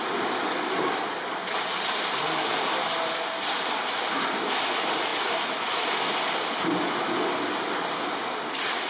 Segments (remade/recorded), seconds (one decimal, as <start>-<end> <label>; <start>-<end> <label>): 0.0-8.9 recorded